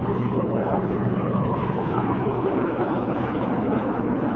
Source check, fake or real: fake